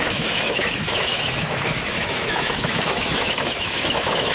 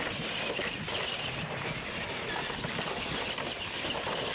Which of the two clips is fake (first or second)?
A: first